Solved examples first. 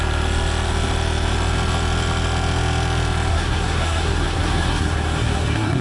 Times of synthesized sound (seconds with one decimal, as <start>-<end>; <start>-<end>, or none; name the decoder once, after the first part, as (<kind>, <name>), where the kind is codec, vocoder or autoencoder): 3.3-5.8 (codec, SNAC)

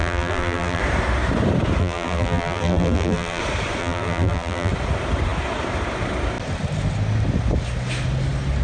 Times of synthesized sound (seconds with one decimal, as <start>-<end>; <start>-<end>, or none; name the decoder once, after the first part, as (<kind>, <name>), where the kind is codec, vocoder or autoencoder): 0.0-0.8 (vocoder, BigVGAN v2); 1.8-3.4; 3.8-4.7

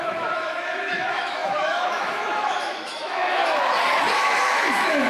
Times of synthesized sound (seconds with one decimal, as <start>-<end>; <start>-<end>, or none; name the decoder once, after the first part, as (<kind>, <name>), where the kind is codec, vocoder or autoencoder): 0.0-3.4 (autoencoder, DAC-VAE); 4.1-5.1